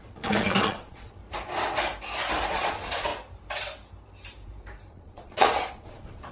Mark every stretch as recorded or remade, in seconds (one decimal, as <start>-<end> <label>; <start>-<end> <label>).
0.0-1.2 remade; 1.2-2.5 recorded; 2.5-3.1 remade; 3.1-4.9 recorded; 4.9-6.3 remade